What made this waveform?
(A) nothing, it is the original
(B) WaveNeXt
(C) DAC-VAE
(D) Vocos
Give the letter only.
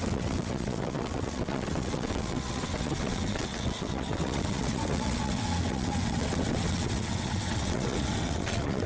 B